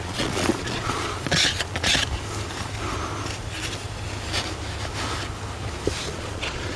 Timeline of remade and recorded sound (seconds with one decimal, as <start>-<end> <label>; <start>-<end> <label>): 0.0-1.9 remade; 1.9-6.0 recorded; 6.0-6.8 remade